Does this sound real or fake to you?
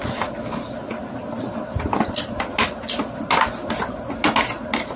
real